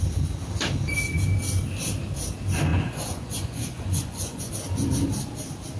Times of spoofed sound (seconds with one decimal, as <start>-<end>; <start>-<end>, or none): 2.7-4.5